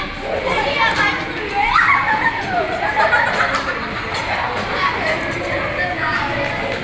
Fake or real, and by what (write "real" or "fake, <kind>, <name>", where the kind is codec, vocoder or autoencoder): real